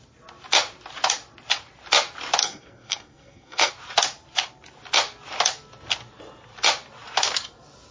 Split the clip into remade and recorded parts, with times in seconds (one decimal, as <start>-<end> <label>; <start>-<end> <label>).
0.0-2.4 recorded; 2.4-3.7 remade; 3.7-7.9 recorded